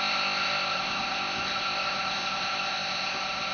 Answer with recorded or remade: remade